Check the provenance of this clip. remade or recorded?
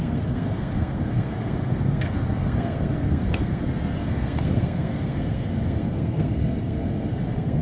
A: remade